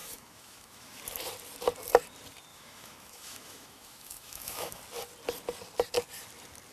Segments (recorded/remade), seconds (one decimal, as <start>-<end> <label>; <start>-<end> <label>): 0.0-1.0 remade; 1.0-2.5 recorded; 2.5-4.8 remade; 4.8-6.7 recorded